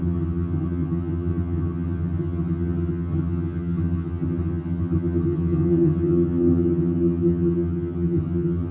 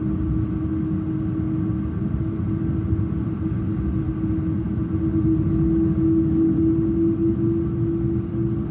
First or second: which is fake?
first